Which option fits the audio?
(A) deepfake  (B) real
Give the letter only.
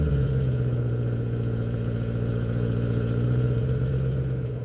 A